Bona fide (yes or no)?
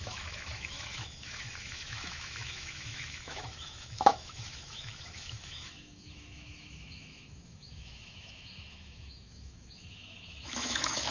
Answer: no